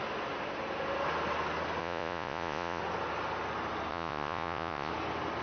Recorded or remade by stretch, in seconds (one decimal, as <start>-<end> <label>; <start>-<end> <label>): 0.0-1.8 recorded; 1.8-2.8 remade; 2.8-3.9 recorded; 3.9-4.9 remade; 4.9-5.4 recorded